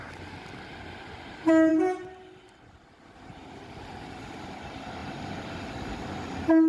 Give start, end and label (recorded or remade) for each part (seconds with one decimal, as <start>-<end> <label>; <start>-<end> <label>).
0.0-1.7 recorded; 1.7-4.2 remade; 4.2-5.0 recorded; 5.0-5.7 remade; 5.7-6.7 recorded